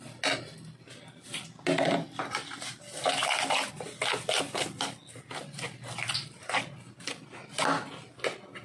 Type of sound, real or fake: real